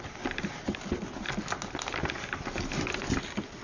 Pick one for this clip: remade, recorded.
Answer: recorded